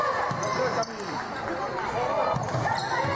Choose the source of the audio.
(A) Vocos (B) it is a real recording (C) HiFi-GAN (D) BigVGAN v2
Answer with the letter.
B